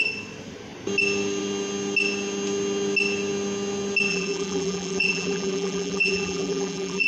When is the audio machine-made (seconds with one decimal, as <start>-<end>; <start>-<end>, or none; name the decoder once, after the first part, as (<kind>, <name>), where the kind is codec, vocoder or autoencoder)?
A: 4.1-7.1 (vocoder, BigVGAN v2)